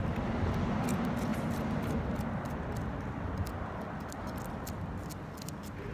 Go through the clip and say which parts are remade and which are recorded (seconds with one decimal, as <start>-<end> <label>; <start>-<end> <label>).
0.0-5.9 recorded